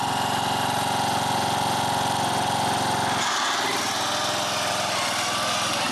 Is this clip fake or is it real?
real